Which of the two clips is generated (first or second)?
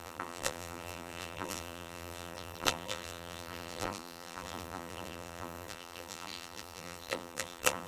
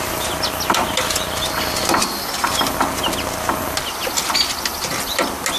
first